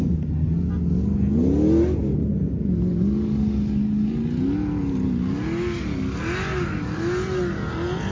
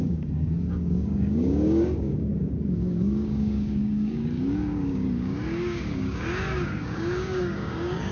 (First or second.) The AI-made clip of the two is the second